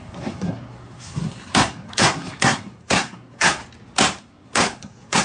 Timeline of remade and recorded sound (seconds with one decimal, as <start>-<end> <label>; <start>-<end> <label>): 0.0-3.6 remade; 3.6-4.2 recorded; 4.2-5.2 remade